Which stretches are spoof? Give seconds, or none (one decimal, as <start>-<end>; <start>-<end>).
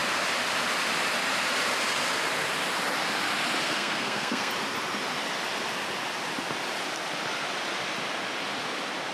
3.6-4.5